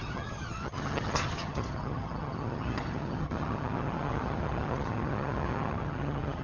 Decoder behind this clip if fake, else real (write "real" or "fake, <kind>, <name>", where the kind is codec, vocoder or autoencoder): fake, vocoder, HiFi-GAN